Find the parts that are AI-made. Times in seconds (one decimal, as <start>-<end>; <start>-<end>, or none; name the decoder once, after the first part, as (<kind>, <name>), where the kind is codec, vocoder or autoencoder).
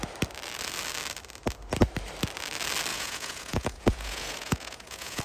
2.9-5.2 (vocoder, Vocos)